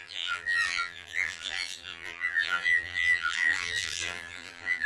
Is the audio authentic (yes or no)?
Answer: no